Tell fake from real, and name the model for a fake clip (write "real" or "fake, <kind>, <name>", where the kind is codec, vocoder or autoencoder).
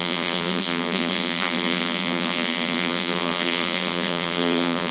fake, vocoder, BigVGAN v2